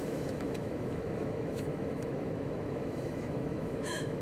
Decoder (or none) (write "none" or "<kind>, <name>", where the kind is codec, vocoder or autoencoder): autoencoder, DAC-VAE